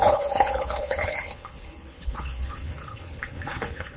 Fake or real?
fake